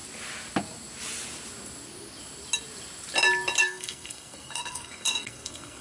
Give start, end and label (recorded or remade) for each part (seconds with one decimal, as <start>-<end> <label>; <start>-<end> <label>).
0.0-3.6 recorded; 3.6-5.8 remade